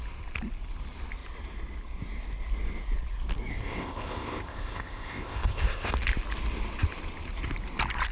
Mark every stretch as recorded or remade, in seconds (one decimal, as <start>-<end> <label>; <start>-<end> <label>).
0.0-3.5 recorded; 3.5-5.9 remade; 5.9-8.1 recorded